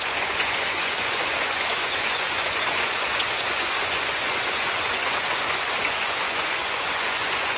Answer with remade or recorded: remade